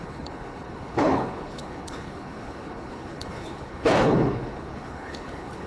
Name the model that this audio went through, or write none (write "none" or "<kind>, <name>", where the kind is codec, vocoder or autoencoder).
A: codec, HILCodec